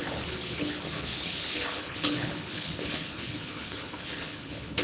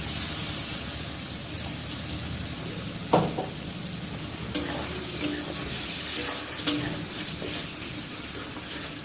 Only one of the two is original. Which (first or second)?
second